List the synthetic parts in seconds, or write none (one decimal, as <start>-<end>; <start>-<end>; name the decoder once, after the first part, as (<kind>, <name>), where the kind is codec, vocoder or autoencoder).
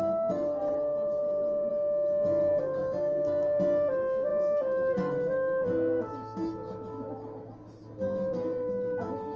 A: none